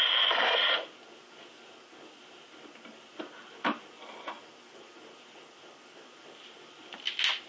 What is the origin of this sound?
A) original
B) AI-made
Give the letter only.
A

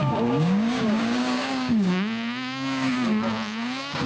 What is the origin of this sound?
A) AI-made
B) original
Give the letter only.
A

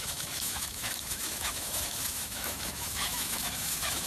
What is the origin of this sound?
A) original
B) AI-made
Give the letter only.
B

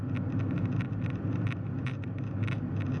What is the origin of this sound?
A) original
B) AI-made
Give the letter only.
A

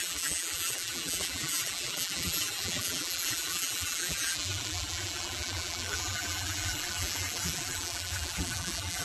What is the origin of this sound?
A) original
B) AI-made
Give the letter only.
B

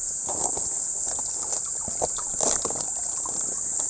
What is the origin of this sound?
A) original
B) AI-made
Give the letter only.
A